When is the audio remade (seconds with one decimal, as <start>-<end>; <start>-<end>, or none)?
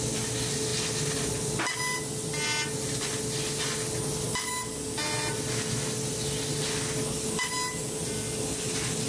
none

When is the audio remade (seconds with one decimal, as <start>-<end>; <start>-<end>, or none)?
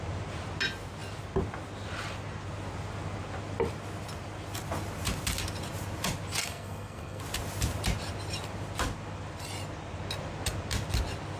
6.4-7.2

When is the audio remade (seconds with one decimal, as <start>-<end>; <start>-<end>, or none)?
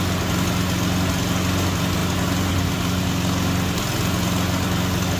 none